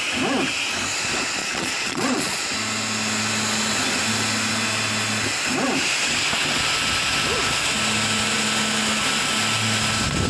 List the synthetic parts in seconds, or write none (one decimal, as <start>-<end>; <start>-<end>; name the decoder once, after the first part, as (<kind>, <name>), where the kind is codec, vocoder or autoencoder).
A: 1.4-2.4 (vocoder, Vocos)